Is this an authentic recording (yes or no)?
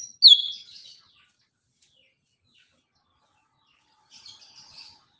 yes